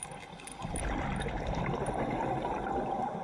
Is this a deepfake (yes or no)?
no